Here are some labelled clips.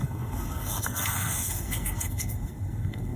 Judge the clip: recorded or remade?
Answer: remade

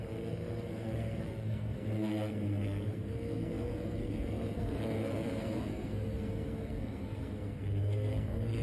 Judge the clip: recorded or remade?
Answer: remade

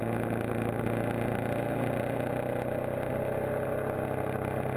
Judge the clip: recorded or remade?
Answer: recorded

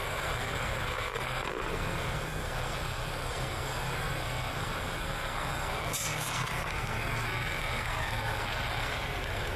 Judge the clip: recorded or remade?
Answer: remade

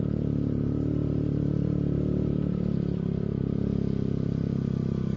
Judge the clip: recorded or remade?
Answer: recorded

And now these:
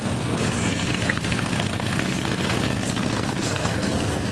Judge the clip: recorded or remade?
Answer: remade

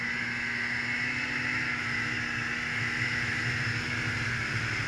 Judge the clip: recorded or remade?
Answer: recorded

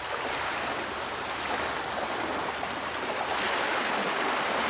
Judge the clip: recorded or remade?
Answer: recorded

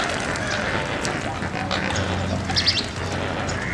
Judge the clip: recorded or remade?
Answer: recorded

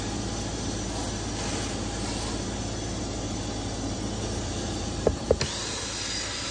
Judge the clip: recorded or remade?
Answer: recorded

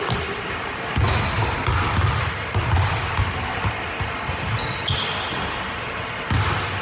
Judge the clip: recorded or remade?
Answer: recorded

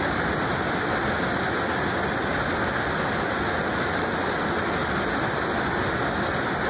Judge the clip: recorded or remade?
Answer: recorded